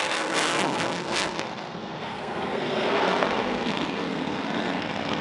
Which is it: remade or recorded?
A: remade